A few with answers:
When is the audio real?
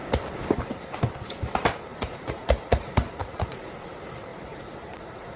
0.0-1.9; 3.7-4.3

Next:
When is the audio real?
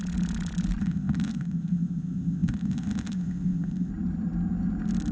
0.0-0.8; 3.9-5.1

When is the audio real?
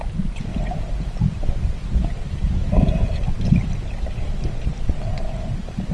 0.0-5.9